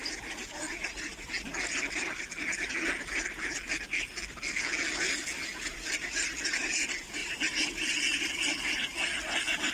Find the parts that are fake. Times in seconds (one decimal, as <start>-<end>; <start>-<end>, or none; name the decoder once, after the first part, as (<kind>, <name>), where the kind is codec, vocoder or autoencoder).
none